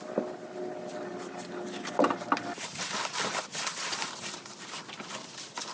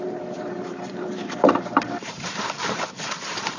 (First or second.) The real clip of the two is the first